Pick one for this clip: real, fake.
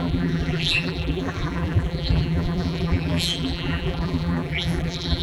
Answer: fake